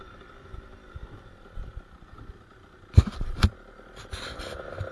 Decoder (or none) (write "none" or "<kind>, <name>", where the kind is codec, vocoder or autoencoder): vocoder, BigVGAN v2